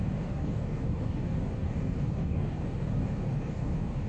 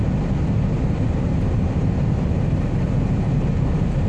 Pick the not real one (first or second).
first